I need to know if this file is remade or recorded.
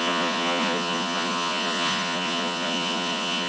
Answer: remade